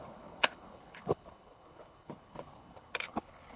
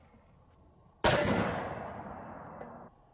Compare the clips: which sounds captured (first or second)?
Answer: second